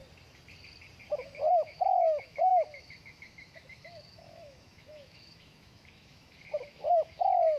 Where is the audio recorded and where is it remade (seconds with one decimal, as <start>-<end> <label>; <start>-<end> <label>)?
0.0-1.5 recorded; 1.5-7.6 remade